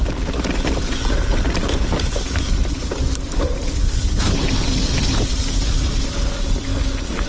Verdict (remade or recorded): recorded